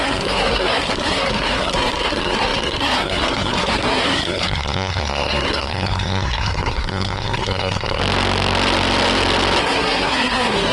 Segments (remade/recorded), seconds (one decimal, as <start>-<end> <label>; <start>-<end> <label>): 0.0-8.0 remade; 8.0-9.6 recorded; 9.6-10.7 remade